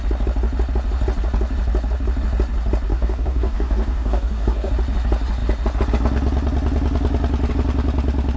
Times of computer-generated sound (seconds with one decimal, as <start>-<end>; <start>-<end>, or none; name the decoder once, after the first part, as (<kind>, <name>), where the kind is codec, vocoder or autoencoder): 2.9-4.7 (codec, DAC)